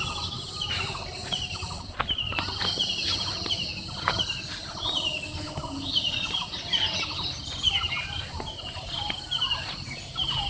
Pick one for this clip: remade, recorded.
recorded